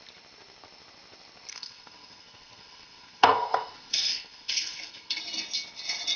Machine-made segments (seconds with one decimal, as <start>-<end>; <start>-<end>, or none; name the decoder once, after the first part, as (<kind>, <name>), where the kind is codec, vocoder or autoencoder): 1.5-5.2 (codec, SNAC)